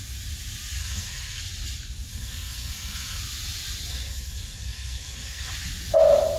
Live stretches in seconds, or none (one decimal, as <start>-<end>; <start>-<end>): 0.0-0.8; 1.4-2.1; 3.2-3.9; 5.5-6.4